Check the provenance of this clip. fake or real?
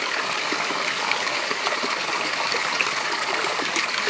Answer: fake